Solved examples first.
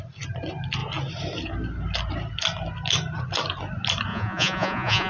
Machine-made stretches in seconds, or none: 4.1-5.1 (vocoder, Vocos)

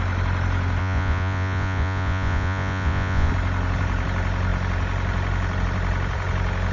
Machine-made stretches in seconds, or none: 0.8-3.3 (vocoder, Vocos)

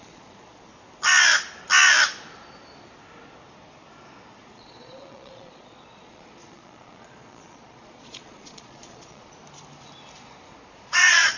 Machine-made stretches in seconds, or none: 0.0-0.7 (vocoder, Vocos); 4.5-9.4; 10.7-11.4

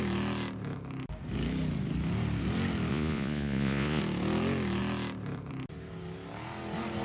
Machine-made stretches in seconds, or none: 2.9-4.0 (vocoder, Vocos)

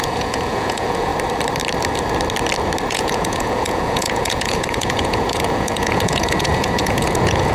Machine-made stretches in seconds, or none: 0.0-1.1 (vocoder, Vocos); 2.9-7.5

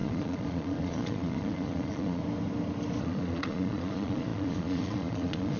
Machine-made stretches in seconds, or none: 0.0-2.2 (vocoder, Vocos); 3.0-5.6

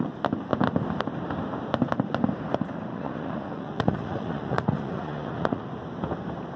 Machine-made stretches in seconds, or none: 2.9-5.7 (vocoder, Vocos)